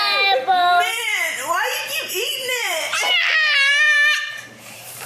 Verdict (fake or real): fake